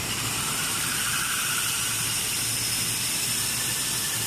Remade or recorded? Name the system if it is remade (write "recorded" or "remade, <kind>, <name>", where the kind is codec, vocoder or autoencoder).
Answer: recorded